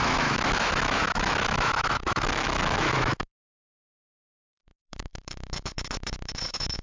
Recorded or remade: remade